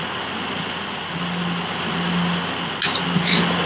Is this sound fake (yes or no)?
no